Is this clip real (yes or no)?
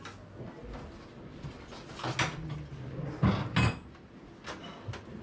yes